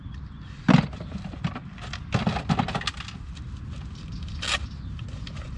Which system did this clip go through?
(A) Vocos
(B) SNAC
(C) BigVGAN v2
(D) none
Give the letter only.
D